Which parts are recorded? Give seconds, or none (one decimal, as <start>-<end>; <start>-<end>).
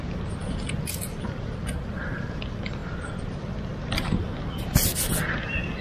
0.0-5.8